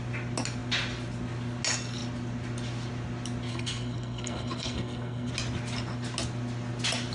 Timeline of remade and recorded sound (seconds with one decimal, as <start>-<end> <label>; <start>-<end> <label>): 0.0-3.5 recorded; 3.5-5.3 remade; 5.3-7.1 recorded